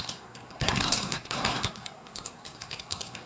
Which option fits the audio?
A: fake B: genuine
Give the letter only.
A